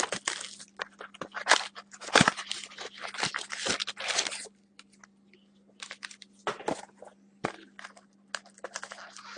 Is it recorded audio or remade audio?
recorded